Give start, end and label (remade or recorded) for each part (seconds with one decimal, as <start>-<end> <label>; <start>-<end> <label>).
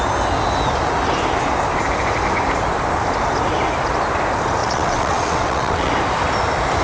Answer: 0.0-4.6 recorded; 4.6-5.9 remade; 5.9-6.8 recorded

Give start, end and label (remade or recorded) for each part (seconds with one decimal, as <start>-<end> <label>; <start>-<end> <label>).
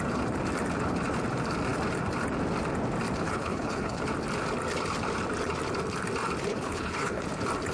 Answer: 0.0-3.2 recorded; 3.2-4.0 remade; 4.0-6.5 recorded; 6.5-7.2 remade; 7.2-7.7 recorded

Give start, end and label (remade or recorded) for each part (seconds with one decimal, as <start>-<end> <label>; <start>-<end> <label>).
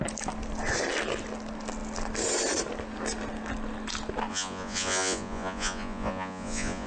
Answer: 0.0-4.3 recorded; 4.3-6.9 remade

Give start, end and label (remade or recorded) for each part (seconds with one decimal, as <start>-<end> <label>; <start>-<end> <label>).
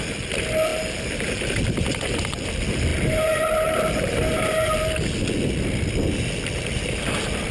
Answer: 0.0-7.5 recorded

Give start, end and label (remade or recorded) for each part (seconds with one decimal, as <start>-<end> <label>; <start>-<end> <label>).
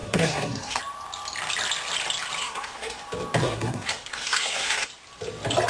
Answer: 0.0-0.8 remade; 0.8-2.4 recorded; 2.4-3.0 remade; 3.0-3.4 recorded; 3.4-4.9 remade; 4.9-5.7 recorded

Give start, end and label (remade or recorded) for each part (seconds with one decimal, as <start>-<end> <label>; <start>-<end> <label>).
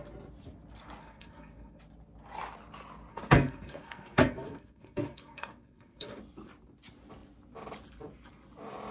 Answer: 0.0-1.0 recorded; 1.0-1.8 remade; 1.8-3.1 recorded; 3.1-6.2 remade; 6.2-8.9 recorded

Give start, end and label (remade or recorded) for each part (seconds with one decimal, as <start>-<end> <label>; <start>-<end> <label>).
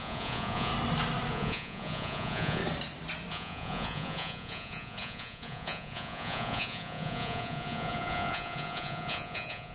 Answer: 0.0-0.7 remade; 0.7-1.3 recorded; 1.3-2.6 remade; 2.6-3.3 recorded; 3.3-9.7 remade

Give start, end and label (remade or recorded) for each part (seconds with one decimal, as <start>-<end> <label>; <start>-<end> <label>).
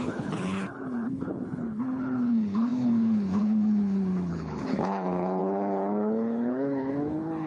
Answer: 0.0-7.5 remade